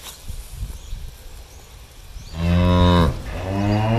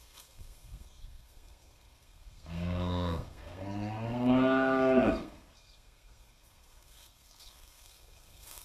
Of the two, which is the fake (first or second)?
second